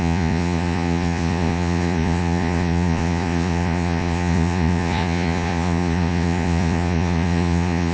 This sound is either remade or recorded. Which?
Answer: remade